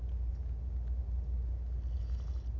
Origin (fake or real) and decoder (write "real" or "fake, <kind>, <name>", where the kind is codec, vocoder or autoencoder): real